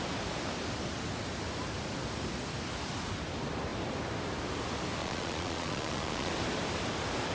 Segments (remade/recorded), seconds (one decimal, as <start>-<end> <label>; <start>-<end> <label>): 0.0-5.0 recorded; 5.0-6.3 remade; 6.3-7.3 recorded